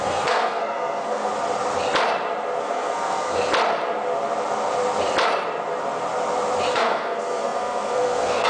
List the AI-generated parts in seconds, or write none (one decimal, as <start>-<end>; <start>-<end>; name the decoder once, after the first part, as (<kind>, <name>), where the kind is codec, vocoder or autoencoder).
0.0-1.3 (codec, SNAC); 2.6-3.4; 6.7-8.5